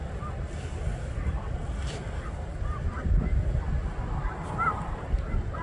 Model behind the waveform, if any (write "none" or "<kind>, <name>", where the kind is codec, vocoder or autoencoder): none